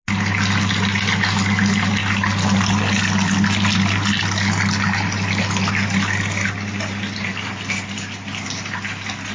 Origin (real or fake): real